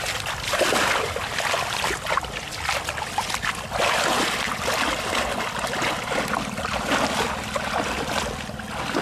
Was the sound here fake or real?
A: real